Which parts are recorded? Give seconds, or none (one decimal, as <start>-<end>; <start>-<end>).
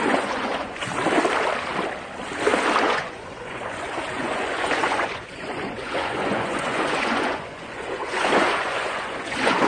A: 0.9-2.8